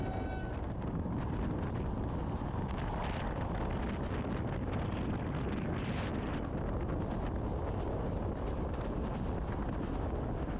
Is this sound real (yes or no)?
yes